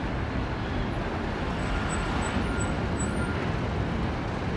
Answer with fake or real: real